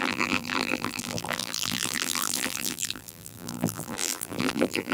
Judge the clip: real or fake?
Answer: fake